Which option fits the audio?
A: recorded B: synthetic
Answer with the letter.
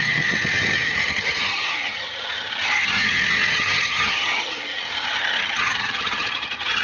B